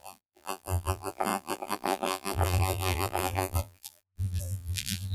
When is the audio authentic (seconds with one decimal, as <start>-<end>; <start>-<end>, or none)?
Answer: none